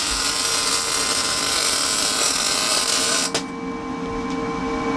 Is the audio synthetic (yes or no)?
no